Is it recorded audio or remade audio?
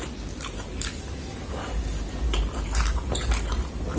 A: recorded